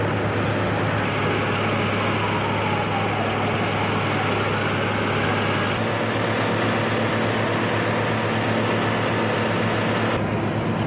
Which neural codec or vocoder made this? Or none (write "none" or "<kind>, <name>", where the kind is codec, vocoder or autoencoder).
none